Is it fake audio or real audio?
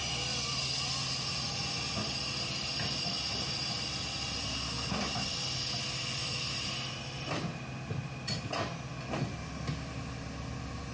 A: real